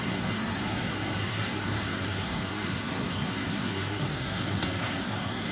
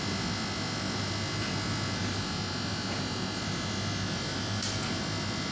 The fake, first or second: first